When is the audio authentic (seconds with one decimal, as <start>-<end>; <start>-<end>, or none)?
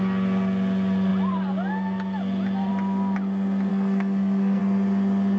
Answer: 0.0-3.7; 4.6-5.4